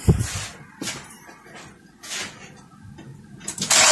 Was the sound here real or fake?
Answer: real